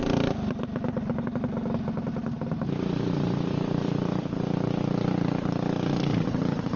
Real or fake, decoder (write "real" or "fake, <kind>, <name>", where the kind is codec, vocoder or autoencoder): real